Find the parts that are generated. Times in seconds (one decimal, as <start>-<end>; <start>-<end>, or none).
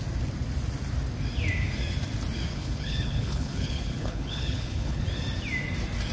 2.5-5.0